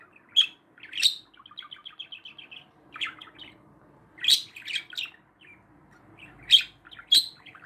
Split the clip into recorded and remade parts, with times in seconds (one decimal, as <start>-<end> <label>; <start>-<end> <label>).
0.0-7.7 recorded